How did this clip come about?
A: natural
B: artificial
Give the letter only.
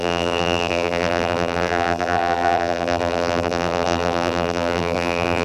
B